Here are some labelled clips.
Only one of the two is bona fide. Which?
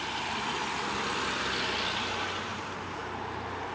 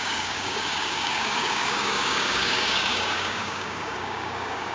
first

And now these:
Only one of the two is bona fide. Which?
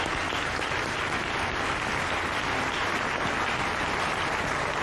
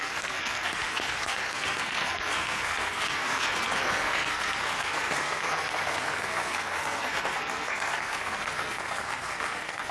first